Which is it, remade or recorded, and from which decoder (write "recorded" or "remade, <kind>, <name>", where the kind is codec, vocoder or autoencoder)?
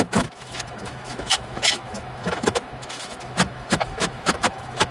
remade, autoencoder, DAC-VAE